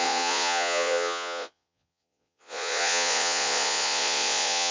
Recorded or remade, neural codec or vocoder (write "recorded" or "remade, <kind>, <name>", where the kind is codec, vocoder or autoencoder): remade, vocoder, Vocos